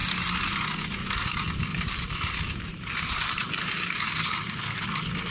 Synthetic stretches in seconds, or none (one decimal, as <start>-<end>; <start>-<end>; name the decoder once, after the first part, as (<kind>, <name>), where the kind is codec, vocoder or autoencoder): 1.7-3.5 (vocoder, BigVGAN v2)

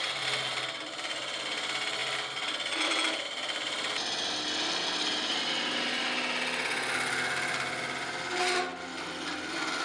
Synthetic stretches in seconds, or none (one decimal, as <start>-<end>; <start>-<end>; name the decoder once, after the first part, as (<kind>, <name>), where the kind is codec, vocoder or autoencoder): 8.7-9.3 (vocoder, BigVGAN v2)

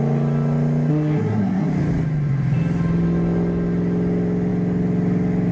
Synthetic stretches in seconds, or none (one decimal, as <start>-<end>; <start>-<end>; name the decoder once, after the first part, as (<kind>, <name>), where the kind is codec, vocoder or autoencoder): 0.9-1.7 (codec, SNAC)